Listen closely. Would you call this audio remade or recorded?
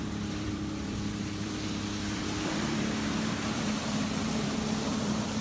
remade